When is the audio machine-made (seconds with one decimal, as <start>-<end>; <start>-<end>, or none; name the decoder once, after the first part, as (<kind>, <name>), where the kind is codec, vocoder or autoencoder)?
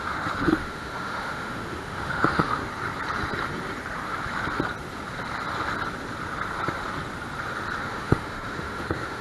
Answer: 0.0-2.6 (autoencoder, DAC-VAE); 7.8-9.2